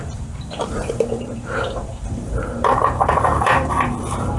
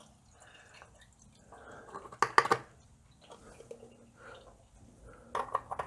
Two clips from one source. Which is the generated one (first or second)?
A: first